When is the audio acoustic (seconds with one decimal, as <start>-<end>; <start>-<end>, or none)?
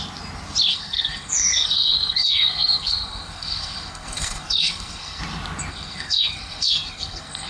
0.0-0.7; 5.2-5.7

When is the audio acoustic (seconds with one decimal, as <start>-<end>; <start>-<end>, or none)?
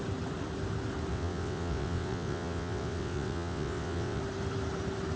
0.0-1.1; 4.2-5.2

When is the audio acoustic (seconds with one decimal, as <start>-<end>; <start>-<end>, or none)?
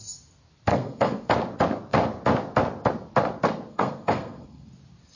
0.0-0.7; 1.3-3.7; 4.7-5.2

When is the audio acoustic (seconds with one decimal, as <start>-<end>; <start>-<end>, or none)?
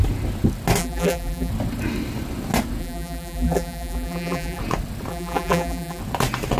0.0-0.8; 1.5-2.8; 4.6-5.1; 6.0-6.6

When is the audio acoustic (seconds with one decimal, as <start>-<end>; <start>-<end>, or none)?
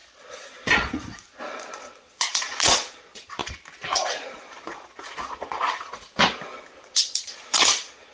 3.4-4.1; 6.1-7.0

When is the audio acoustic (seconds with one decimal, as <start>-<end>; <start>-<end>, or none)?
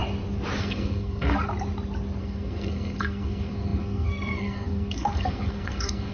0.0-0.6; 1.4-2.2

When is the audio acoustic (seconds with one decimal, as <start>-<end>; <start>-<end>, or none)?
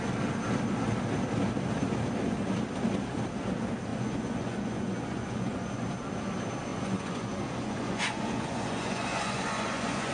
0.0-3.9; 5.9-6.7